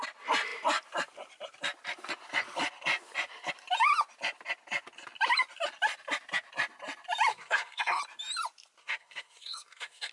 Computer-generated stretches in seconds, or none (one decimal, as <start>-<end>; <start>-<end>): 7.3-8.0; 8.8-10.1

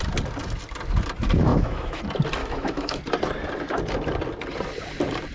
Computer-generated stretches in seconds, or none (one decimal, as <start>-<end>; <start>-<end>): 1.5-2.0; 2.4-3.0

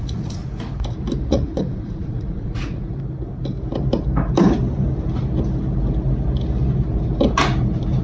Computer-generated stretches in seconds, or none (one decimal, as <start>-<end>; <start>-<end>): 0.0-0.4; 1.3-2.9

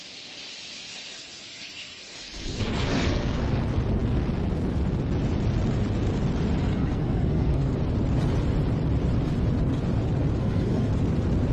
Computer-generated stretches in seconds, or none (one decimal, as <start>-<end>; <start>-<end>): 0.9-3.6; 6.6-7.7; 10.4-10.9

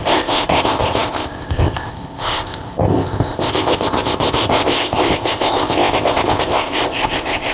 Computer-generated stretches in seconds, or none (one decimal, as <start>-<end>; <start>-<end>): 0.0-7.5